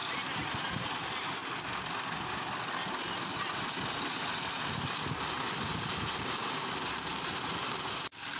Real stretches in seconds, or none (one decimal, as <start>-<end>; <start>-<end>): 0.0-0.8; 1.4-5.5